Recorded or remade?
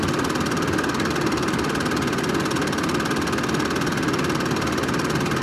recorded